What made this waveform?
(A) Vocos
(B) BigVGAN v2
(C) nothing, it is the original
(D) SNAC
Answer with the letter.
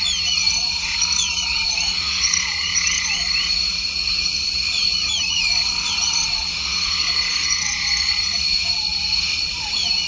A